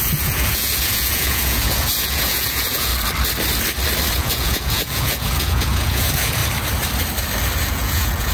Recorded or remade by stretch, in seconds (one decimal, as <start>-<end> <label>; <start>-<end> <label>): 0.0-2.9 remade; 2.9-4.1 recorded; 4.1-6.4 remade; 6.4-7.7 recorded; 7.7-8.3 remade